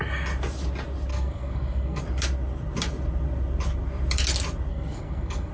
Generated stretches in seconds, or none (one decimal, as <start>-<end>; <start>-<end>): 1.1-2.0; 4.7-5.5